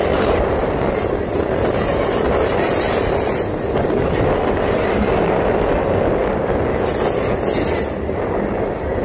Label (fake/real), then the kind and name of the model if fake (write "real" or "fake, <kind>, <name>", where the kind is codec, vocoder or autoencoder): real